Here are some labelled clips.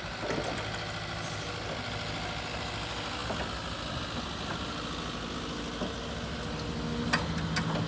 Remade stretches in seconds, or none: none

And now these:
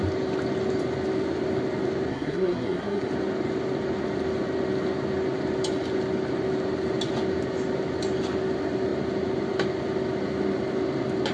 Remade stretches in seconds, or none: 2.1-3.1

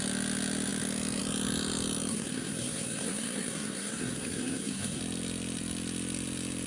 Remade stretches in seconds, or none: 2.1-5.0

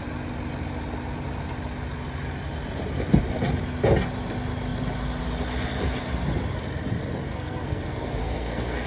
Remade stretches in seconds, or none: 7.3-8.9